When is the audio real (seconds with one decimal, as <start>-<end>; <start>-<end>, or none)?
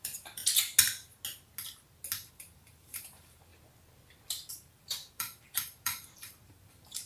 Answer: 0.4-2.3; 3.5-4.5